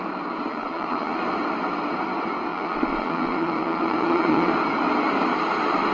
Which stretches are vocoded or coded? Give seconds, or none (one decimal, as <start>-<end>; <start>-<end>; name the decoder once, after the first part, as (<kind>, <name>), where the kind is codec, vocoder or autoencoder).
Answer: 0.5-1.2 (vocoder, Vocos); 2.5-4.5